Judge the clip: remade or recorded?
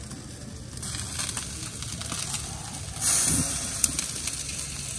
recorded